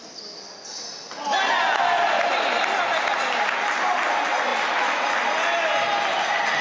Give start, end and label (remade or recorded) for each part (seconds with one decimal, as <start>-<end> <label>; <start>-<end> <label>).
0.0-6.6 recorded

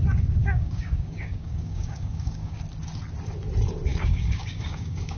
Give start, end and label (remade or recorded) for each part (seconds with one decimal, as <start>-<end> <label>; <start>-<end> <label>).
0.0-0.4 recorded; 0.4-2.6 remade; 2.6-3.9 recorded; 3.9-5.2 remade